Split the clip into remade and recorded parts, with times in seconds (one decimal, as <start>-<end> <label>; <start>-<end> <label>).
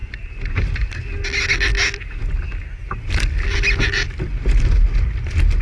0.0-0.9 remade; 0.9-5.6 recorded